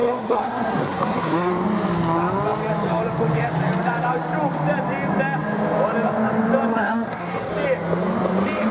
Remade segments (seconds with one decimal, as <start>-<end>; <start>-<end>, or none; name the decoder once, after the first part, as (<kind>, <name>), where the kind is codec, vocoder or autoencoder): 0.0-1.5 (codec, SNAC); 6.7-7.5